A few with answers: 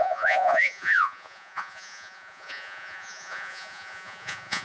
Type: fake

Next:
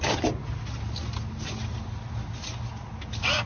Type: real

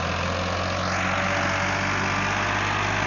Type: real